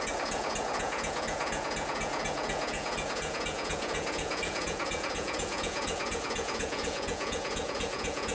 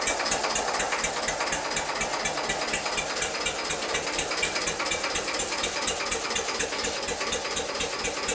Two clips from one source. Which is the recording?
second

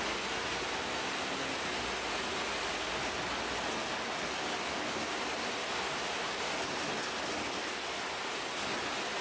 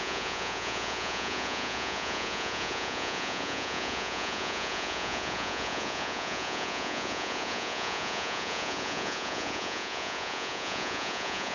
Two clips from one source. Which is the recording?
first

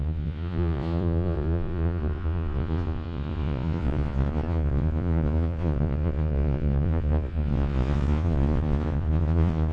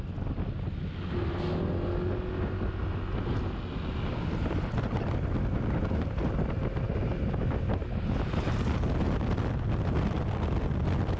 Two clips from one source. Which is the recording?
second